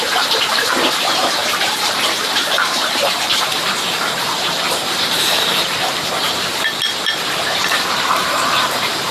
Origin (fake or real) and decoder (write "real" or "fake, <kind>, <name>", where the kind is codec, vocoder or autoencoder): fake, vocoder, BigVGAN v2